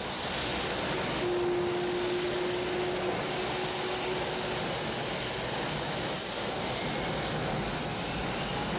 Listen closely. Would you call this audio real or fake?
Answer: real